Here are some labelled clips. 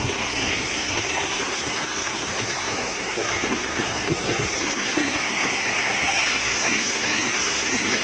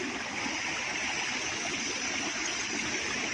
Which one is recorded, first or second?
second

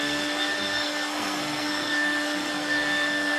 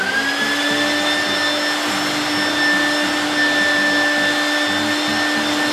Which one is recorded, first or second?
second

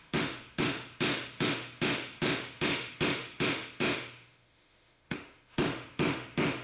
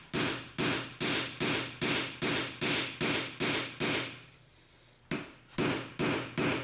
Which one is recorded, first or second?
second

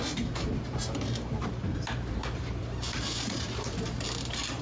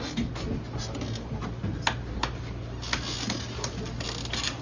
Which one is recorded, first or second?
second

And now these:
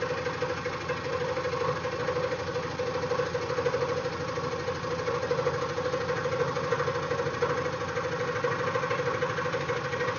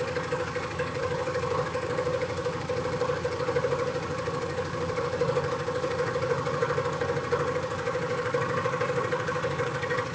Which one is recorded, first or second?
first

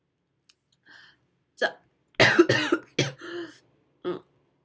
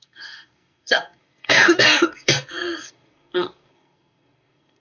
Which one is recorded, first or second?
first